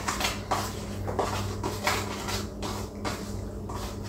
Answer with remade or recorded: recorded